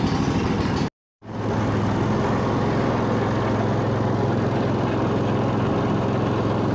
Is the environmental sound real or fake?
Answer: real